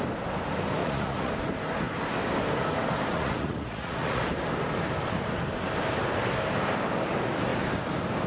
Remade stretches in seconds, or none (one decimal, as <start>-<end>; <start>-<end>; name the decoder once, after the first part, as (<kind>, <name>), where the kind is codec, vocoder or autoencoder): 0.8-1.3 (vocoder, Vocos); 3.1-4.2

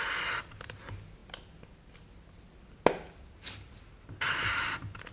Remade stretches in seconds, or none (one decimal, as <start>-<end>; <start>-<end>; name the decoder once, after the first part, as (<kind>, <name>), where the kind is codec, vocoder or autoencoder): none

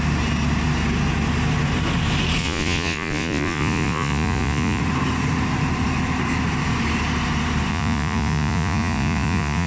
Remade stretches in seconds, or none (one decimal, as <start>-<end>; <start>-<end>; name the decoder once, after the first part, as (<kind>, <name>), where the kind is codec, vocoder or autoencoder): 2.4-4.8 (vocoder, Vocos); 7.7-9.7

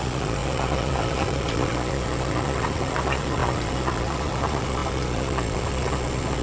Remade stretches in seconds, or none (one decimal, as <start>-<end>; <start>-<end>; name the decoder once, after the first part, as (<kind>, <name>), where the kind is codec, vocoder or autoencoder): 0.0-6.4 (vocoder, Vocos)